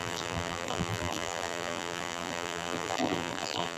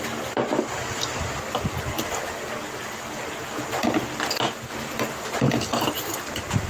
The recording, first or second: second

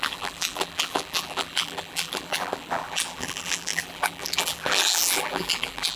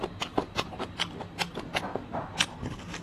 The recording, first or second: second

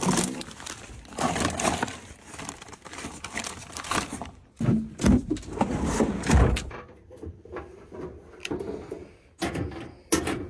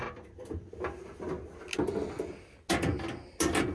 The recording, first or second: second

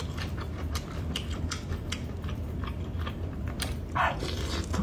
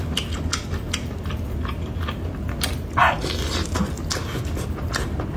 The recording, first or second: second